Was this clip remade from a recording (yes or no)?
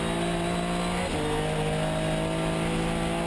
no